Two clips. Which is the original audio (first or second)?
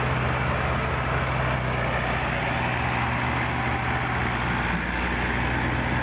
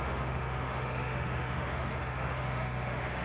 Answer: first